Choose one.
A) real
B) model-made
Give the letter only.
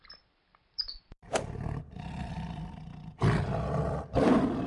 B